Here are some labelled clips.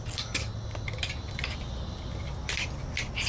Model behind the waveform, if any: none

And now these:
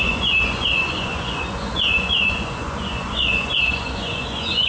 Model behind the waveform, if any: vocoder, Vocos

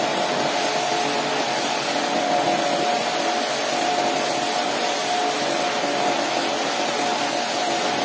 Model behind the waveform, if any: none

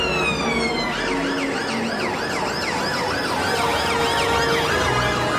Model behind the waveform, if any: none